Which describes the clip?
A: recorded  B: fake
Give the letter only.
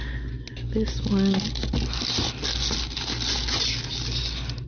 A